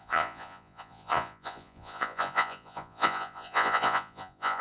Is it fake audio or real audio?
fake